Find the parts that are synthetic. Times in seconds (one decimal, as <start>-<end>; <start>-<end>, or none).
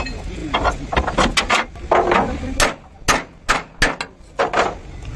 none